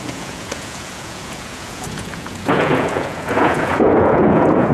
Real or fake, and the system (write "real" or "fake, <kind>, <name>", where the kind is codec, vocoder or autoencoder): fake, vocoder, Vocos